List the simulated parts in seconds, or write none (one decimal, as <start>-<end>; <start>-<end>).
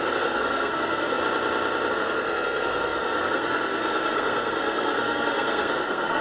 0.0-1.2; 1.9-6.2